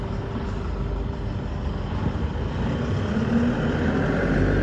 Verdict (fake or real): real